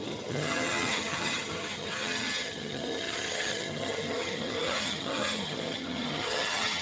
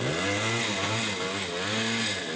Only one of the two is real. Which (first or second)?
second